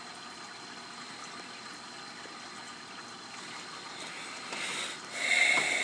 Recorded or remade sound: recorded